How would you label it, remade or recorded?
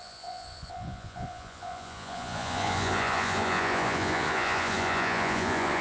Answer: remade